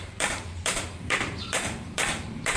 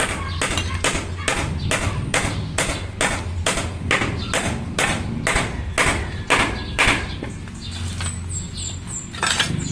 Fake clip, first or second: first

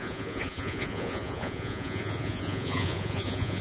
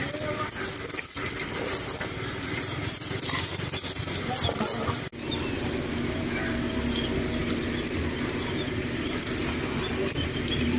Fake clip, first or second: first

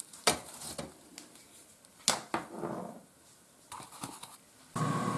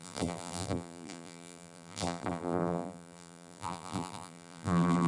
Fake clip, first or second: second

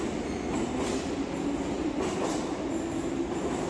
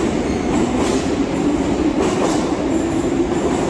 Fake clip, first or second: second